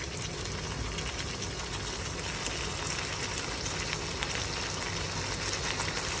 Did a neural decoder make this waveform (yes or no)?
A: no